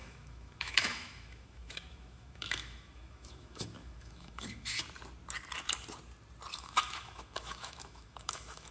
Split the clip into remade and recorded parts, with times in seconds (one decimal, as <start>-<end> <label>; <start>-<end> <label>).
0.0-4.8 remade; 4.8-6.5 recorded; 6.5-8.7 remade